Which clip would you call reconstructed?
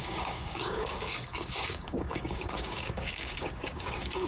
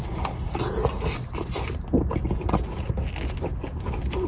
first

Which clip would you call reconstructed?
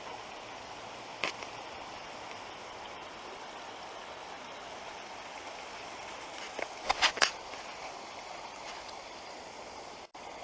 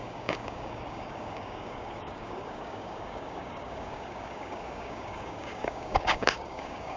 second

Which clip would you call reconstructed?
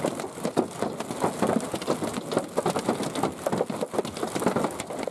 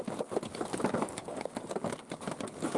second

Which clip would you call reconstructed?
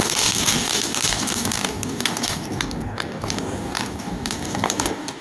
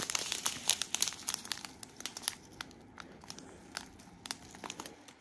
first